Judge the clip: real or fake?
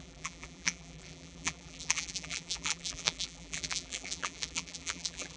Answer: fake